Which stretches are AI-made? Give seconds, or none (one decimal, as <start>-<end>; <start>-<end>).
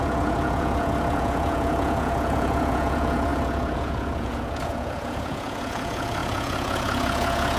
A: 0.0-7.6